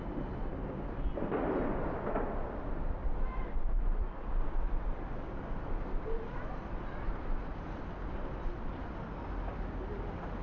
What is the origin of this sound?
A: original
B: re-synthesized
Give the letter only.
A